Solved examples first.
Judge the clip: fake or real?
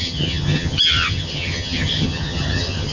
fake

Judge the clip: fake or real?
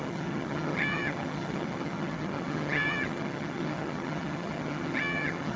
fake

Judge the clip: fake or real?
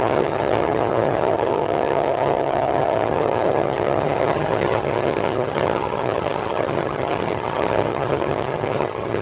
fake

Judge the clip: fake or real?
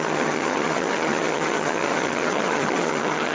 fake